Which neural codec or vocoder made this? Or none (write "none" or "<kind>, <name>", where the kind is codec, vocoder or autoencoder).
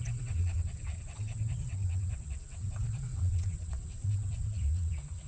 vocoder, WaveNeXt